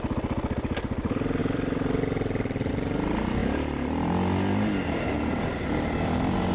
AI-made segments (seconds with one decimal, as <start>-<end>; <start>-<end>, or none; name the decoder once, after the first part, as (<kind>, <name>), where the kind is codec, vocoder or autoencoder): 1.4-2.7 (vocoder, BigVGAN v2)